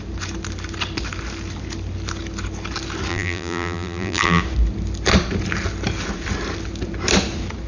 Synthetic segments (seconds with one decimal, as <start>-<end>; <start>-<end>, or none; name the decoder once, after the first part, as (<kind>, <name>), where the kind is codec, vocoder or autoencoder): 3.1-4.4 (vocoder, BigVGAN v2)